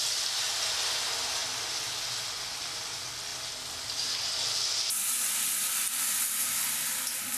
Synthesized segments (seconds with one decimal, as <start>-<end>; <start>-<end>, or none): none